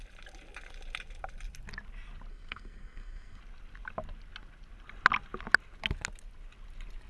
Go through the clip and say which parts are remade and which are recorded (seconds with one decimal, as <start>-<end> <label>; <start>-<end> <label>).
0.0-2.3 recorded; 2.3-3.4 remade; 3.4-7.1 recorded